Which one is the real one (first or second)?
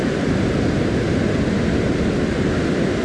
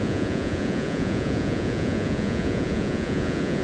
first